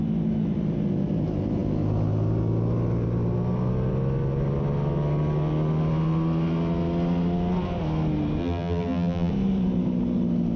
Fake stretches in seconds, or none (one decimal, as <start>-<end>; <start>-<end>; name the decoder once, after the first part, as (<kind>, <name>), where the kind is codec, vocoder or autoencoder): 8.4-9.3 (vocoder, BigVGAN v2)